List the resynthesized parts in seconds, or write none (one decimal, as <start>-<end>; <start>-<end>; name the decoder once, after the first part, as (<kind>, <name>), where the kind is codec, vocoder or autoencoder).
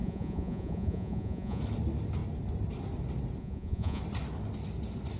0.0-1.6 (vocoder, Vocos); 3.4-4.0